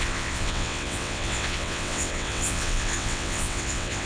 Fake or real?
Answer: fake